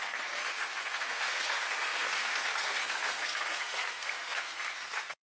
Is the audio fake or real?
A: fake